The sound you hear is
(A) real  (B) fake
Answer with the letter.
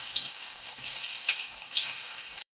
B